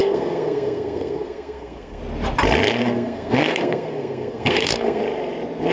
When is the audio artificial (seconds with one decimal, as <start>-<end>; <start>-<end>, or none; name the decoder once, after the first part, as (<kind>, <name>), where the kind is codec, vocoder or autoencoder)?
0.0-2.0 (codec, SNAC); 2.8-5.0